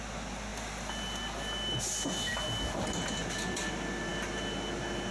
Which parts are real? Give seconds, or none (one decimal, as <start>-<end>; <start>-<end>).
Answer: 0.0-5.1